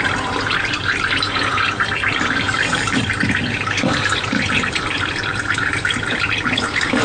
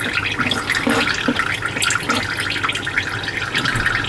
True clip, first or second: second